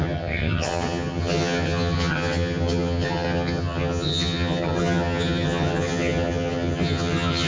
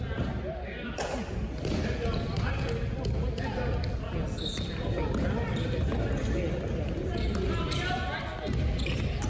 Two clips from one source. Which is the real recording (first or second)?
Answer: second